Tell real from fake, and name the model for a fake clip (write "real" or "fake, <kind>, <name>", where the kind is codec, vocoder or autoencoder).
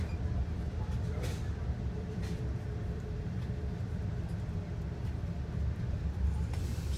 fake, vocoder, BigVGAN v2